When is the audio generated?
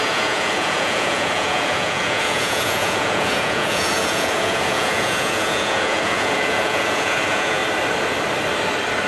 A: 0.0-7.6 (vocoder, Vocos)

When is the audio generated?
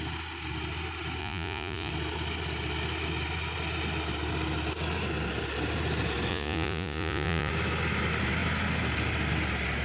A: 1.2-1.9 (vocoder, Vocos); 6.3-7.5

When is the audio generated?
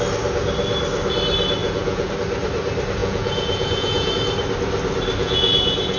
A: 1.6-2.1 (vocoder, Vocos); 3.0-4.1; 5.2-6.0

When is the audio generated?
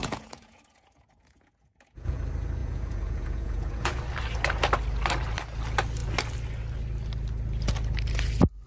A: 0.0-2.2 (vocoder, Vocos); 2.6-4.0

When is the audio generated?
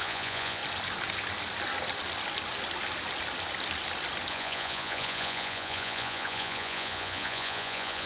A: 0.0-0.6 (vocoder, Vocos); 4.3-8.1